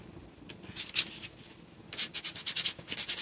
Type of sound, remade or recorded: recorded